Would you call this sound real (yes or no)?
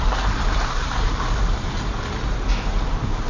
no